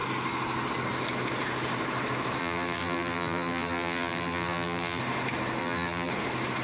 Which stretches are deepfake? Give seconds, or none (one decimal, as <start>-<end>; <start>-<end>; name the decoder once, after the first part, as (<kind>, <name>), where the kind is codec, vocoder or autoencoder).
2.4-5.0 (vocoder, BigVGAN v2); 5.6-6.1